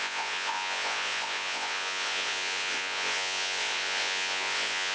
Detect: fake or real fake